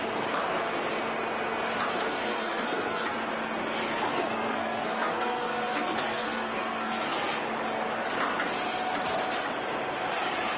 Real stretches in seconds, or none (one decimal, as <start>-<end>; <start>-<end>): 0.0-2.2; 3.0-4.1; 7.3-10.6

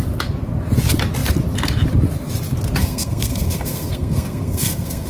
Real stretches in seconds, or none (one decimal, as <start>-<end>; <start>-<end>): 0.0-2.8

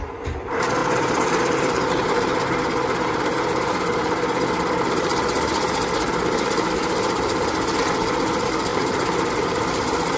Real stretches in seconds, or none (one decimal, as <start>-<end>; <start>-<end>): 0.0-0.8; 1.9-2.9; 4.0-8.7; 9.3-10.2